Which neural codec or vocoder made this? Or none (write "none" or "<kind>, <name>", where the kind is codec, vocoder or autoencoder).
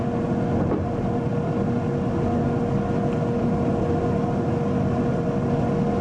none